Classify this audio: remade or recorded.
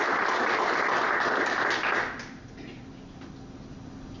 recorded